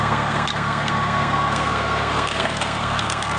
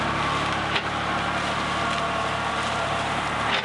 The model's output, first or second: first